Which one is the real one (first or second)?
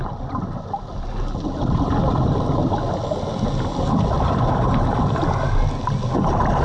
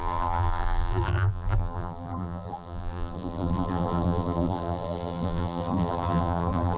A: first